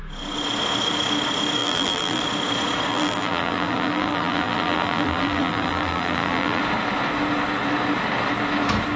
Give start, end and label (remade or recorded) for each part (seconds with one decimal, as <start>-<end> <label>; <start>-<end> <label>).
0.0-1.6 recorded; 1.6-2.2 remade; 2.2-2.9 recorded; 2.9-6.6 remade; 6.6-9.0 recorded